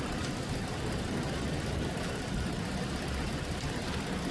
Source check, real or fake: fake